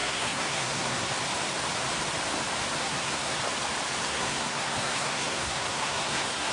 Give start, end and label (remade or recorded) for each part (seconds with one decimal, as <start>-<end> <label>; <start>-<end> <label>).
0.0-1.1 remade; 1.1-2.8 recorded; 2.8-3.4 remade; 3.4-4.0 recorded; 4.0-6.5 remade